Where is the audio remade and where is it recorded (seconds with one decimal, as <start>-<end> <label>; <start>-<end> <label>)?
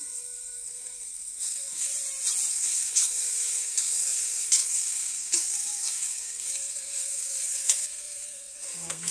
0.0-1.9 remade; 1.9-2.5 recorded; 2.5-9.1 remade